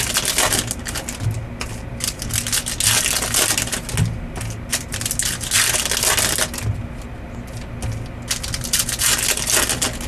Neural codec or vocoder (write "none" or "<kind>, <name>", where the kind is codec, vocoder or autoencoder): none